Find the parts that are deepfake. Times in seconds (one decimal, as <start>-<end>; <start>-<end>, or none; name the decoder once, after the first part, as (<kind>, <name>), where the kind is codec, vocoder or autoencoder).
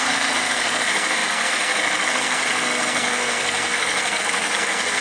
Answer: 0.0-5.0 (codec, SNAC)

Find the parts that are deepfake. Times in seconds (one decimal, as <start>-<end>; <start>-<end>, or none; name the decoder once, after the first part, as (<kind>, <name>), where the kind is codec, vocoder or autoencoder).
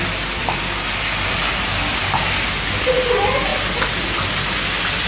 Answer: none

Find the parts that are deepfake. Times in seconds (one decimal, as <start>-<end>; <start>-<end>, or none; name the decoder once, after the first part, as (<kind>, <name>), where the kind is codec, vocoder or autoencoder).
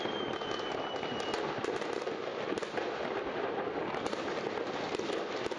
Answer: none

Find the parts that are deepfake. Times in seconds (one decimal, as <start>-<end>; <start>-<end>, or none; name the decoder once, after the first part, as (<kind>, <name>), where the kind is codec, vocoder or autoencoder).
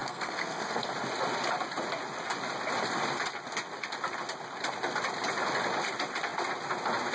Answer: 0.0-0.9 (codec, SNAC)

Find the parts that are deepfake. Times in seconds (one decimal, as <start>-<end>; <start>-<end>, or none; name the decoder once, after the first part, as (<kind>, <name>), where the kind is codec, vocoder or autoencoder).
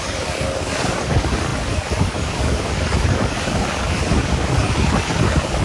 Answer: 0.0-5.6 (codec, DAC)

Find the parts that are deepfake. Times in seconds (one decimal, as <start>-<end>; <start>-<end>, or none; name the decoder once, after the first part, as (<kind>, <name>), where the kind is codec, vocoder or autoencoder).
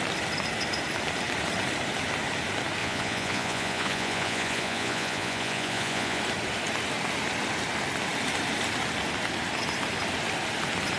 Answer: 2.8-6.2 (vocoder, Vocos)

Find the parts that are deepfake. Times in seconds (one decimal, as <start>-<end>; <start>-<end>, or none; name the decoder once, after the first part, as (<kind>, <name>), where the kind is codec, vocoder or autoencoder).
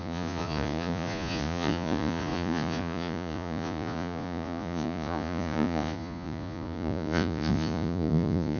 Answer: 0.0-8.6 (vocoder, Vocos)